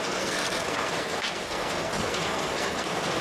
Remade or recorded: remade